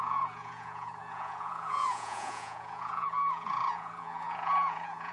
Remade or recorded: remade